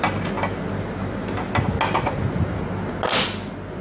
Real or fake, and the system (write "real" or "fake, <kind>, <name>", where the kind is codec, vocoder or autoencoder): real